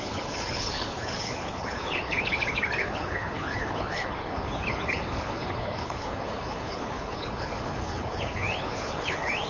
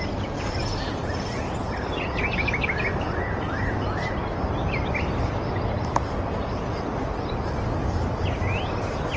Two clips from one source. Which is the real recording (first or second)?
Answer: second